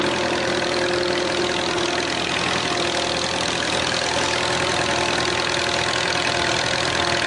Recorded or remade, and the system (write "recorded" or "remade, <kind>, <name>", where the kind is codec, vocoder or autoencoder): recorded